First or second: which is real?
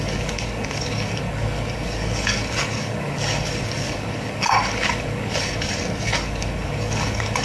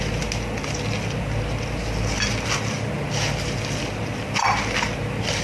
second